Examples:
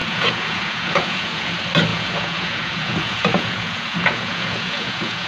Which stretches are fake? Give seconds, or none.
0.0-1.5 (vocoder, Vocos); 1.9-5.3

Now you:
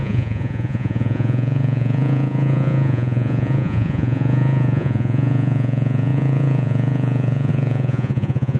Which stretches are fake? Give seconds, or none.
0.0-8.6 (vocoder, Vocos)

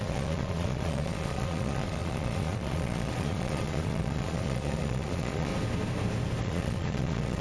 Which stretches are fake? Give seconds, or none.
0.0-5.5 (vocoder, Vocos); 6.4-7.4

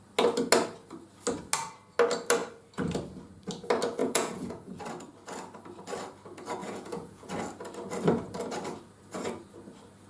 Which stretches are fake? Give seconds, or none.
4.0-4.8 (vocoder, Vocos); 6.6-7.3

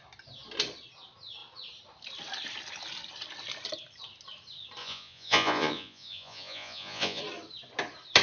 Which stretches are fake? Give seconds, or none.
4.8-7.2 (vocoder, Vocos)

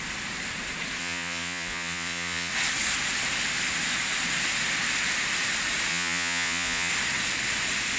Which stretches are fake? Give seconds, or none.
1.0-2.5 (vocoder, Vocos); 5.9-6.9

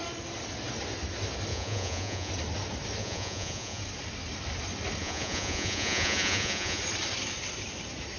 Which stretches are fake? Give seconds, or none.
1.5-2.3 (vocoder, Vocos); 3.0-3.8; 5.0-6.8